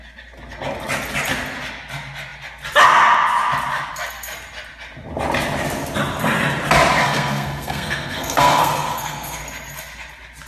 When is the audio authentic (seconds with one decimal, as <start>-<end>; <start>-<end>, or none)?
0.0-7.0; 9.4-10.5